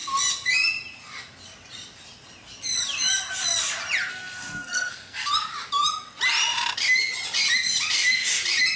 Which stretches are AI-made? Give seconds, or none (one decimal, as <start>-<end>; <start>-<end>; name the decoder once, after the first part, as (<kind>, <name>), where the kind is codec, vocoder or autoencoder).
4.1-5.3 (codec, SNAC)